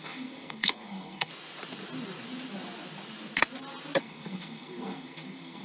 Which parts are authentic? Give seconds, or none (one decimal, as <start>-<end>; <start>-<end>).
1.3-4.0